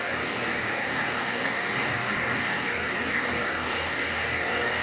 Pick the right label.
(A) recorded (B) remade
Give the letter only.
B